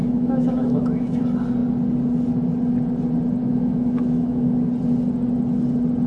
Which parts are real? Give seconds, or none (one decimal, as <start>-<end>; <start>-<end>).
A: 1.2-3.4; 4.7-6.1